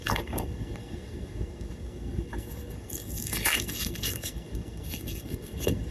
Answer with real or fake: fake